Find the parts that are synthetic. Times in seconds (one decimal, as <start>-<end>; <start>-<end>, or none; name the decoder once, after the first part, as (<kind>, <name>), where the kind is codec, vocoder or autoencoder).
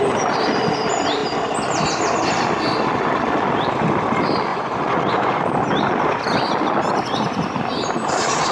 4.5-5.4 (vocoder, Vocos)